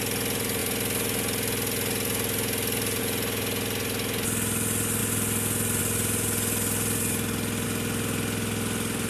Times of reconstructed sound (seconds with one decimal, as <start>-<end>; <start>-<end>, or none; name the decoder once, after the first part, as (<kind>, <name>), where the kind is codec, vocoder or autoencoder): none